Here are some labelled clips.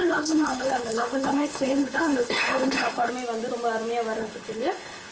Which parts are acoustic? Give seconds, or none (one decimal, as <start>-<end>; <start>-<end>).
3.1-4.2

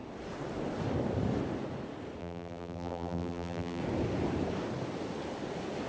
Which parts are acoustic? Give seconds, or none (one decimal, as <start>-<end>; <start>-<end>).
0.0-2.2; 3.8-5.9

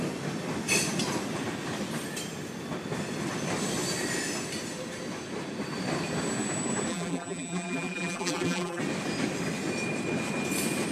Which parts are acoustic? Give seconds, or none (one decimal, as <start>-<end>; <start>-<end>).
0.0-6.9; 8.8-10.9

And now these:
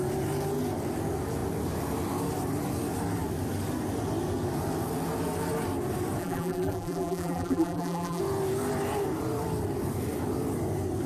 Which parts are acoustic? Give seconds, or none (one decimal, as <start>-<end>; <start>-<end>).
0.0-6.2; 8.2-11.1